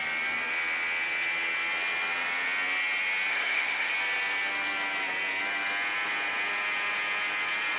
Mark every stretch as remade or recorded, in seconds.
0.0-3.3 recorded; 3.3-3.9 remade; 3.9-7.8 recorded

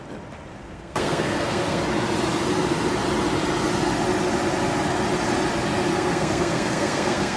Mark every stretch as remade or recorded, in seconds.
0.0-0.6 recorded; 0.6-1.8 remade; 1.8-5.9 recorded; 5.9-7.4 remade

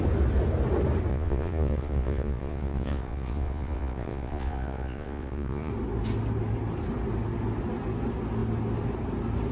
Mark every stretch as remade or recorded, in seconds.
0.0-1.1 recorded; 1.1-5.7 remade; 5.7-9.5 recorded

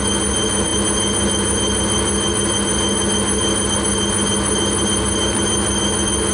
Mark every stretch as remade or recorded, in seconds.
0.0-6.3 recorded

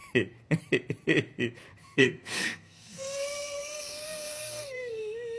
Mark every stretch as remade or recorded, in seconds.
0.0-1.8 recorded; 1.8-5.0 remade; 5.0-5.4 recorded

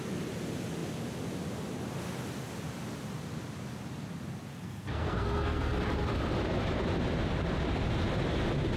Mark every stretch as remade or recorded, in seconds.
0.0-4.5 recorded; 4.5-5.8 remade; 5.8-8.8 recorded